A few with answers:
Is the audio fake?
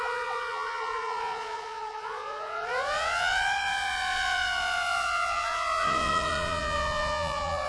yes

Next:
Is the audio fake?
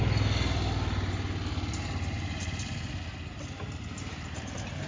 no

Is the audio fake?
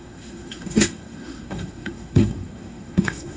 yes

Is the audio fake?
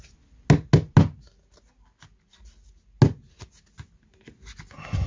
no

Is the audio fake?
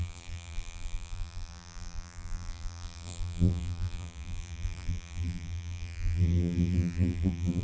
yes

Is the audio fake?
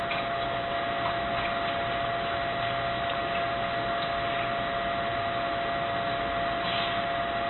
no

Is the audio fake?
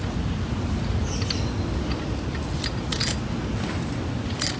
no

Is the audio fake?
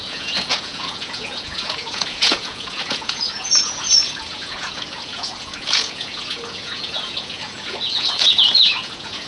yes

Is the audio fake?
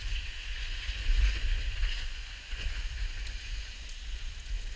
yes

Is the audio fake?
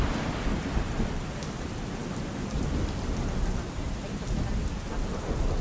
no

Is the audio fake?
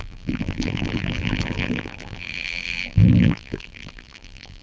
yes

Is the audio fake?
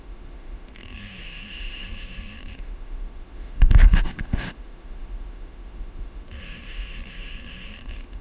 yes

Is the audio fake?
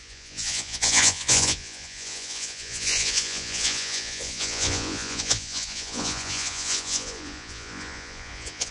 yes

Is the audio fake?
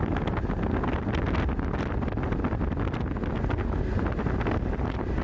no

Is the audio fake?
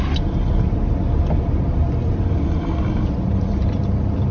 no